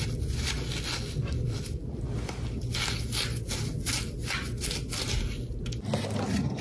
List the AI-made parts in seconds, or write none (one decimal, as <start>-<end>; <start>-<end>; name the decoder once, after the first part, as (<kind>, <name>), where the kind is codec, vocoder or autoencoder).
none